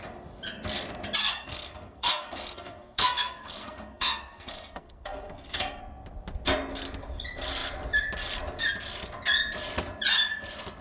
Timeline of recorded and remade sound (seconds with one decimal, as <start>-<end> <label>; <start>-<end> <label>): 0.0-1.2 recorded; 1.2-5.8 remade; 5.8-10.8 recorded